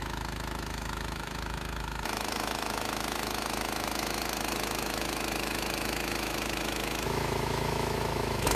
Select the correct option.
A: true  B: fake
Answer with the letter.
B